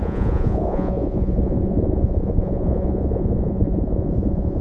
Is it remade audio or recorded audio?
remade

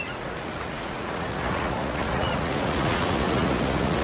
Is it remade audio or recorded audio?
remade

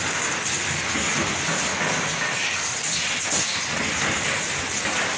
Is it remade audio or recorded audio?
recorded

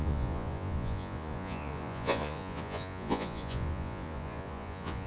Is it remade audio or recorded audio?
remade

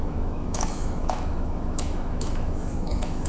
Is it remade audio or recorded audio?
remade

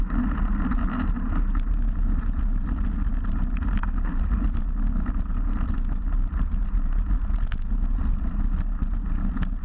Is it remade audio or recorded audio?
recorded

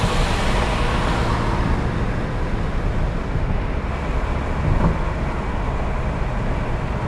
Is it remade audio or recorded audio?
recorded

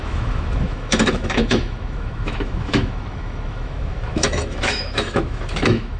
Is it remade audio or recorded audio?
remade